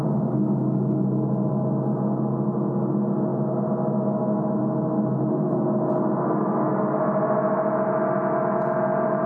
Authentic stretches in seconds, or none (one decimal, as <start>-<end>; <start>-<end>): 0.0-3.3; 4.6-9.3